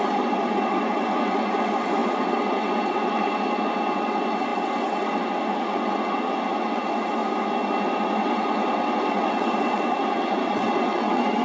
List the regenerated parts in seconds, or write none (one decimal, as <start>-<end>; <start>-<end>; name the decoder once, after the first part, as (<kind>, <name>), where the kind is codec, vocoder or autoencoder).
0.0-7.2 (vocoder, WaveNeXt); 7.8-11.4